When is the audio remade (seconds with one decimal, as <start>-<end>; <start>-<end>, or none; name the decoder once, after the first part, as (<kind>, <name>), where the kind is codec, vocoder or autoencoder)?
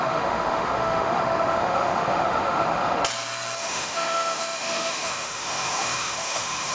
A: 0.0-3.0 (autoencoder, DAC-VAE); 3.6-6.7